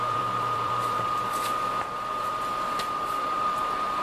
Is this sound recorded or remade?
remade